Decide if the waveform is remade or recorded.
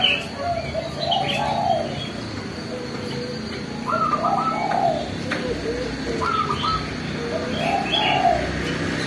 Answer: recorded